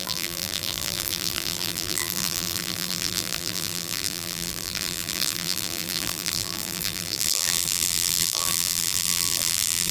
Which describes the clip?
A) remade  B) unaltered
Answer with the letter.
A